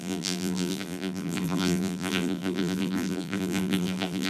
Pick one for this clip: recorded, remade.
remade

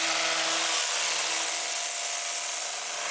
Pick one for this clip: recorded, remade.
recorded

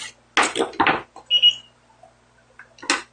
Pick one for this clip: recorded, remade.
recorded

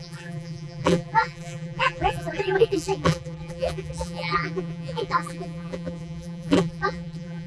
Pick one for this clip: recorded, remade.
remade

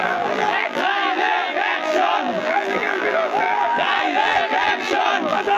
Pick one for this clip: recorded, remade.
remade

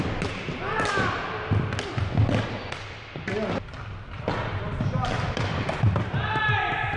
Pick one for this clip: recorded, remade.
recorded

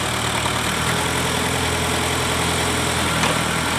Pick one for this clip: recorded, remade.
recorded